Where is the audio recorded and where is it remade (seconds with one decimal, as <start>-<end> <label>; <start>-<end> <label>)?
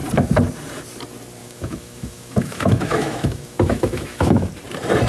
0.0-1.4 recorded; 1.4-4.5 remade; 4.5-5.1 recorded